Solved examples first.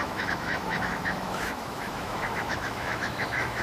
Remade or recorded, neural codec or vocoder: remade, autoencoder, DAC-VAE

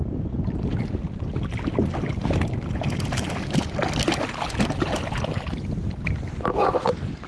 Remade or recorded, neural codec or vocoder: recorded